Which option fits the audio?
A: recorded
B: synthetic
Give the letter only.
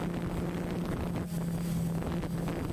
A